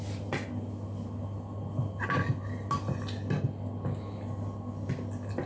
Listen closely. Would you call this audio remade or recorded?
recorded